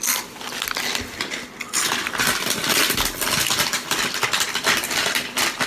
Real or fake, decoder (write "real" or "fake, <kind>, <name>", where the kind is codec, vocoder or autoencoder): real